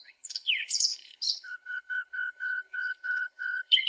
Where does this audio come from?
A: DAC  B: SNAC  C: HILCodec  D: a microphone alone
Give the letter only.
C